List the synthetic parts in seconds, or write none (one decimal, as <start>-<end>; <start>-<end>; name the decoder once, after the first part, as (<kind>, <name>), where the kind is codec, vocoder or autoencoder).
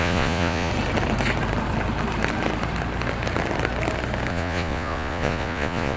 0.0-0.7 (vocoder, Vocos); 4.3-6.0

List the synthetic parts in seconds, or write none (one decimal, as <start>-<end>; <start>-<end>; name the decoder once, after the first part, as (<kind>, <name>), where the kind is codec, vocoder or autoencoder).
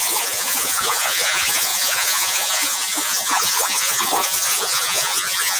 0.0-5.6 (vocoder, Vocos)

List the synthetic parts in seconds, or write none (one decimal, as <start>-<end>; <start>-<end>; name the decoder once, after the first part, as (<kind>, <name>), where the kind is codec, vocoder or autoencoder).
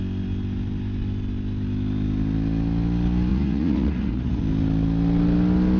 3.3-4.4 (vocoder, Vocos)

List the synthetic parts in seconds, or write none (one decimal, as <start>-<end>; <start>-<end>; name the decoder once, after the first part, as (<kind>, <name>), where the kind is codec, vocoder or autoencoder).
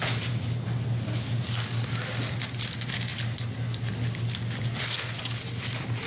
none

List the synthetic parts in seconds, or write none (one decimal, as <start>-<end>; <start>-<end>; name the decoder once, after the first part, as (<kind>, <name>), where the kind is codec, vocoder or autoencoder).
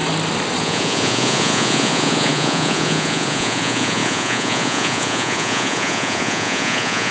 0.6-7.1 (vocoder, Vocos)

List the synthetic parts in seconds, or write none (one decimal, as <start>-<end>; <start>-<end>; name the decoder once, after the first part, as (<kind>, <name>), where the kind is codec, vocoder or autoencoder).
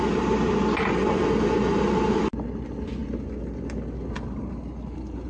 none